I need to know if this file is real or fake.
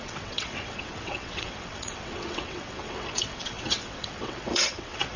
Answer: fake